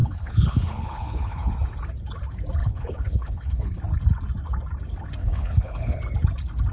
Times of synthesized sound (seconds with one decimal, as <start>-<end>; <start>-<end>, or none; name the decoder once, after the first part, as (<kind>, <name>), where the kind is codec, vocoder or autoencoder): 0.0-1.5 (codec, HILCodec); 2.6-3.8; 5.2-6.0